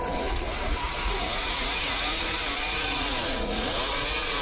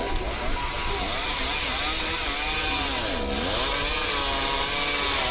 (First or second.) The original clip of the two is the second